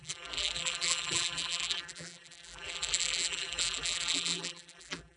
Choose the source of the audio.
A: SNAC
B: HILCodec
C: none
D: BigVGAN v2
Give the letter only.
D